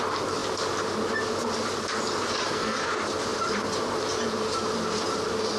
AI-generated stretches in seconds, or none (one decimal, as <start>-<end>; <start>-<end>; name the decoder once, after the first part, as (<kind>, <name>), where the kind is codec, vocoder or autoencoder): 2.4-2.9 (codec, SNAC)